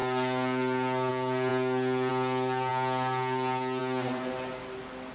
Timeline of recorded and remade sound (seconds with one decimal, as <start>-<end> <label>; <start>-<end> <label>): 0.0-5.1 recorded